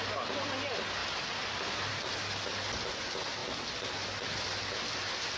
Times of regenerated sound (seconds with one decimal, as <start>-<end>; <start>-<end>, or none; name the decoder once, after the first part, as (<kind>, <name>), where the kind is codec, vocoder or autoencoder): none

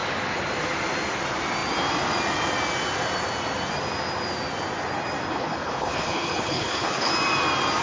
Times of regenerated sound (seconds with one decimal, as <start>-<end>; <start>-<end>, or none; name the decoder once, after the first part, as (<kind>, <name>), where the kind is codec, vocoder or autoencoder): 5.3-7.1 (codec, HILCodec)

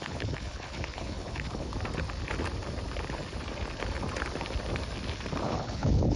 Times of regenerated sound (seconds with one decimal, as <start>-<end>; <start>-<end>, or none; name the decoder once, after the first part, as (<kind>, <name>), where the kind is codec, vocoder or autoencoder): 0.0-1.7 (codec, HILCodec); 5.4-6.2